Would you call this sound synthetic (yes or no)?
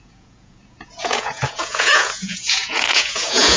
yes